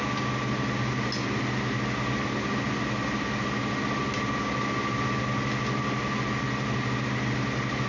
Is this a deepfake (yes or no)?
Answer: no